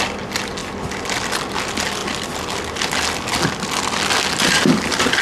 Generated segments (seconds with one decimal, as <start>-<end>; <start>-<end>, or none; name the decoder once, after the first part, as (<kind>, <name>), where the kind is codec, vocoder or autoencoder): none